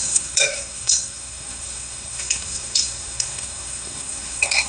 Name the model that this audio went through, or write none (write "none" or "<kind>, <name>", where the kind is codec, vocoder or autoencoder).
codec, SNAC